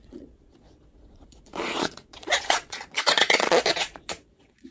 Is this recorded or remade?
remade